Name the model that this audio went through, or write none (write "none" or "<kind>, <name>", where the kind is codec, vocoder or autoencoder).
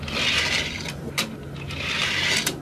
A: none